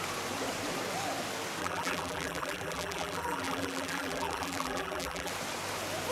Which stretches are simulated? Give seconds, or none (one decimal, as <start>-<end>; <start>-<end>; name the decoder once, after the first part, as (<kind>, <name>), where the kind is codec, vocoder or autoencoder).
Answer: 1.6-5.3 (vocoder, BigVGAN v2)